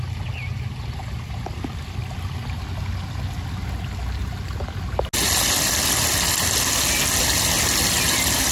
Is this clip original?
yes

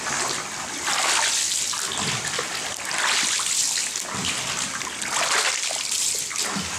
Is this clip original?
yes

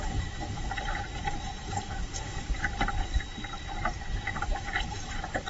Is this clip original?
no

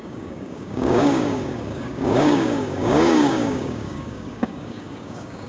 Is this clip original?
no